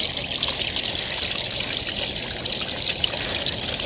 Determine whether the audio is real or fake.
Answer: real